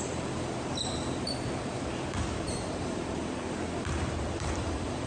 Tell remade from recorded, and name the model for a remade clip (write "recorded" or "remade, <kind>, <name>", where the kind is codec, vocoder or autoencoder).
remade, vocoder, BigVGAN v2